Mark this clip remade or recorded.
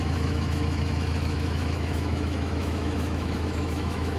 remade